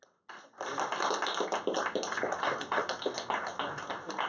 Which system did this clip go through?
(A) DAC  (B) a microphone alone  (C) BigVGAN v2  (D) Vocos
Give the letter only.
B